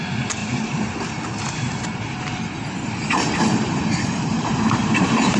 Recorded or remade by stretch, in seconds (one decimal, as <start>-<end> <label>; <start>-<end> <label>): 0.0-0.4 recorded; 0.4-1.0 remade; 1.0-3.0 recorded; 3.0-5.4 remade